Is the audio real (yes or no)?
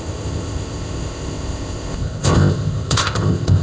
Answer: no